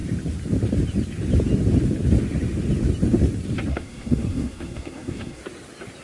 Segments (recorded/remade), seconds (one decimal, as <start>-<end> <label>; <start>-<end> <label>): 0.0-3.7 recorded; 3.7-5.4 remade; 5.4-6.0 recorded

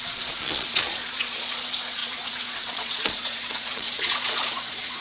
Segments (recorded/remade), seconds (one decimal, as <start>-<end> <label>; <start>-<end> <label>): 0.0-5.0 remade